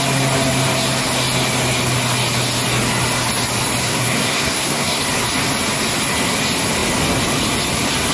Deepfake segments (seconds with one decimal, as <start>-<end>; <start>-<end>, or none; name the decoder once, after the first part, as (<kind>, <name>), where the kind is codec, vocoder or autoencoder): 3.8-5.0 (codec, SNAC)